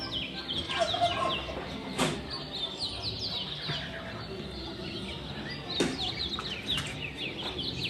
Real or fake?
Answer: real